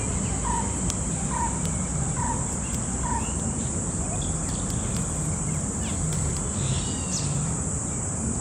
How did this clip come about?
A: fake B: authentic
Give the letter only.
B